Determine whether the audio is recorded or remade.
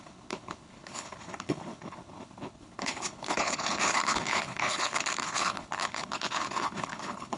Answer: remade